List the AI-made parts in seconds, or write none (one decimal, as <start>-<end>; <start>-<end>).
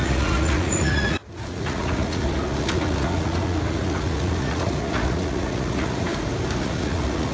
0.0-6.1; 6.6-7.3